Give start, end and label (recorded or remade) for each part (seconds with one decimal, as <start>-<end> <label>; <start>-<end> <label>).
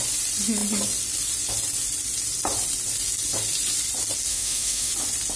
0.0-4.3 recorded; 4.3-4.9 remade; 4.9-5.4 recorded